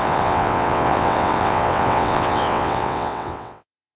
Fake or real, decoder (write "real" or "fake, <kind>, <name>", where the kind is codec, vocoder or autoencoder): fake, vocoder, WaveNeXt